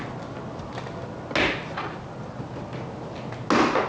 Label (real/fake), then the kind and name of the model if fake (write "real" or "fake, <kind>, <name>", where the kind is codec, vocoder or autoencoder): real